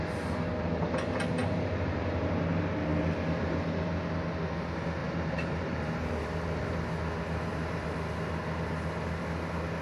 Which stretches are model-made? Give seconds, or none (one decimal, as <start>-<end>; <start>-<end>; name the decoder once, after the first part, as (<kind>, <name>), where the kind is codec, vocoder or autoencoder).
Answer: 1.4-2.2 (vocoder, BigVGAN v2); 5.0-6.7; 7.5-8.1